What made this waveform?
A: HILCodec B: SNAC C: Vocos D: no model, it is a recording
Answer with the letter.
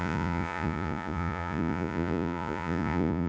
C